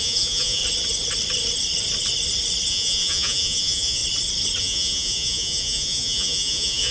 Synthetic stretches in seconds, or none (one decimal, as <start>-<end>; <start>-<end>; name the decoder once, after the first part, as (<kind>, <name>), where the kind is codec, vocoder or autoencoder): 0.0-0.6 (vocoder, Vocos); 2.7-4.0; 4.6-6.9